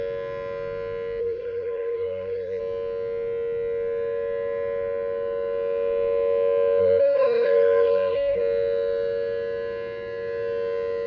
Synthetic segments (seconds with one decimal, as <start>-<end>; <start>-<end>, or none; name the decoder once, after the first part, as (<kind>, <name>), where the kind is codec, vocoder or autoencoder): 1.2-2.6 (codec, SNAC); 6.8-8.4